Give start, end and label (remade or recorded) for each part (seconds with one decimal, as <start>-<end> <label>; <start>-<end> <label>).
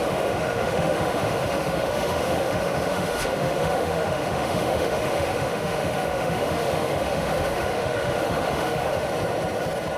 0.0-9.1 remade; 9.1-10.0 recorded